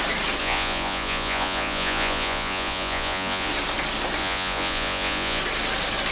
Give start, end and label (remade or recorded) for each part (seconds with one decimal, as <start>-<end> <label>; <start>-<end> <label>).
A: 0.0-0.4 recorded; 0.4-3.5 remade; 3.5-4.2 recorded; 4.2-5.4 remade; 5.4-6.1 recorded